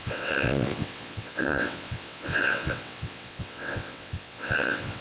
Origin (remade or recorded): remade